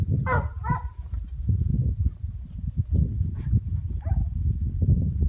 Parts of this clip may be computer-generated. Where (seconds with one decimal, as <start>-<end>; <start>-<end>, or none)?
0.0-1.7